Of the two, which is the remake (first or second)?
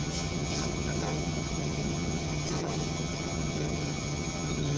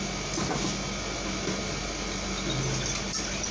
first